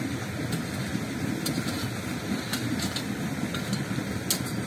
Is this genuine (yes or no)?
yes